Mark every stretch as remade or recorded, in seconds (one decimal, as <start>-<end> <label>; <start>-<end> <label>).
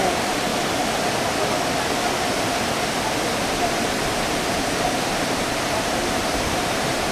0.0-0.5 remade; 0.5-4.5 recorded; 4.5-7.1 remade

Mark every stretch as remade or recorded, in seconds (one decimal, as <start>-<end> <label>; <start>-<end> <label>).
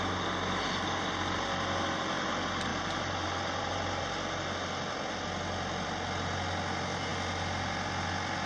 0.0-2.7 recorded; 2.7-4.0 remade; 4.0-8.5 recorded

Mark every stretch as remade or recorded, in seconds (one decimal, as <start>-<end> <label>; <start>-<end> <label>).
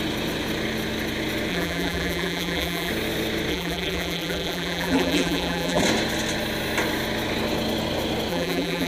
0.0-1.5 recorded; 1.5-2.9 remade; 2.9-3.5 recorded; 3.5-5.8 remade; 5.8-8.3 recorded; 8.3-8.9 remade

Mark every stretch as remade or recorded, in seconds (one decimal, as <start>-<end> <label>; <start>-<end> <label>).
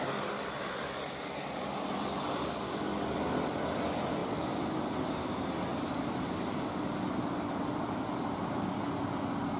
0.0-4.2 recorded; 4.2-4.8 remade; 4.8-5.7 recorded; 5.7-6.8 remade; 6.8-9.6 recorded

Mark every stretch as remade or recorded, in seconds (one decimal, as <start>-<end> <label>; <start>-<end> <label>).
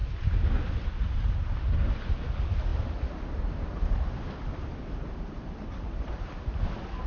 0.0-0.7 remade; 0.7-2.7 recorded; 2.7-6.6 remade; 6.6-7.1 recorded